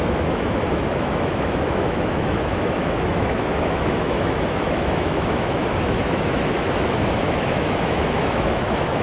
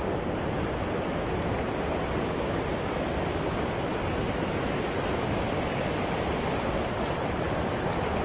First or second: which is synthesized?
first